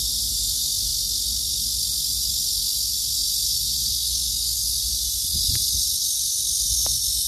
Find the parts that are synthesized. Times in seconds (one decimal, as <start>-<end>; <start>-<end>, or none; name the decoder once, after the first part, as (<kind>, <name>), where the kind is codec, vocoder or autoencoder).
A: none